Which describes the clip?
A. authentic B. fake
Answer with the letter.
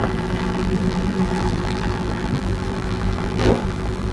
B